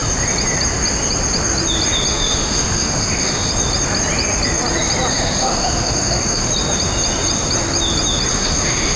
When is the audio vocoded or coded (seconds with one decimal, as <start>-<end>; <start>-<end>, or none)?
2.1-3.5; 5.1-6.5; 8.3-9.0